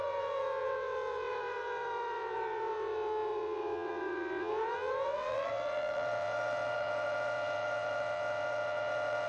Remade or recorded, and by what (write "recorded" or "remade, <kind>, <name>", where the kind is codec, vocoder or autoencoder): remade, vocoder, WaveNeXt